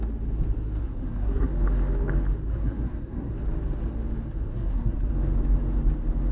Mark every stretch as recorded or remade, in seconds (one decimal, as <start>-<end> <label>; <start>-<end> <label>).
0.0-0.8 recorded; 0.8-1.5 remade; 1.5-2.5 recorded; 2.5-3.3 remade; 3.3-4.5 recorded; 4.5-5.1 remade; 5.1-6.3 recorded